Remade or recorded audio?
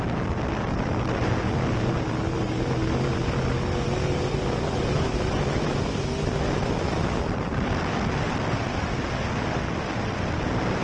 recorded